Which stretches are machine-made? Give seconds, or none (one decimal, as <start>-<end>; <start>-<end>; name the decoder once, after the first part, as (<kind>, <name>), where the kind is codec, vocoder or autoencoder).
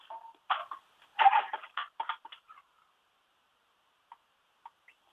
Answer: 1.8-4.5 (vocoder, BigVGAN v2)